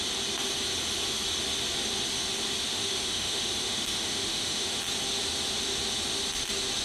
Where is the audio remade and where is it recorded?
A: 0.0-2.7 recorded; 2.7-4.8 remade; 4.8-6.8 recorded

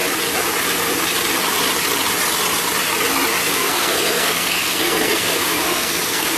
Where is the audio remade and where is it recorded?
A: 0.0-3.4 recorded; 3.4-6.4 remade

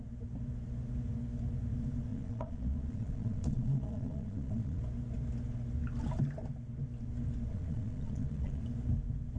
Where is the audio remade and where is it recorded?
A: 0.0-2.1 recorded; 2.1-4.8 remade; 4.8-7.5 recorded; 7.5-8.6 remade; 8.6-9.4 recorded

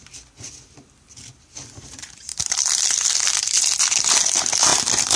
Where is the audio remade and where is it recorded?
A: 0.0-5.2 recorded

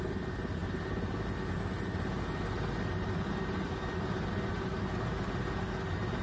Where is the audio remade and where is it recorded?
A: 0.0-6.2 recorded

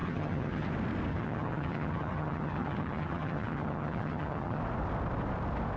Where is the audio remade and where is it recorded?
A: 0.0-0.7 remade; 0.7-1.1 recorded; 1.1-4.6 remade; 4.6-5.8 recorded

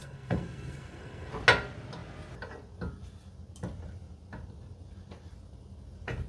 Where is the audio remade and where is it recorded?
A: 0.0-1.3 remade; 1.3-6.3 recorded